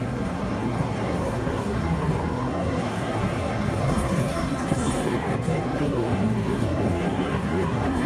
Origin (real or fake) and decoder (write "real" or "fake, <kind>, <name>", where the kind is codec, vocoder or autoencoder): fake, codec, SNAC